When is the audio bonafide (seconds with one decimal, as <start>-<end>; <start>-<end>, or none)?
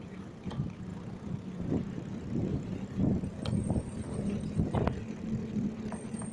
0.0-6.3